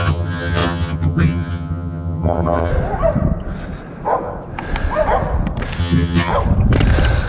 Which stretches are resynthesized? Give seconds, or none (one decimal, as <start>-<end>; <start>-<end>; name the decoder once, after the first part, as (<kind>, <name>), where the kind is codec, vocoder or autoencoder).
0.0-2.7 (vocoder, HiFi-GAN); 5.8-6.3